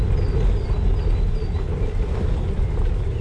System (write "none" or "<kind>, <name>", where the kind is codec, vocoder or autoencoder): none